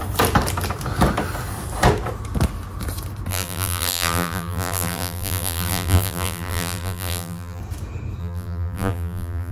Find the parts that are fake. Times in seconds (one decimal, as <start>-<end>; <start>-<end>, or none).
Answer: 3.3-7.6; 8.2-9.5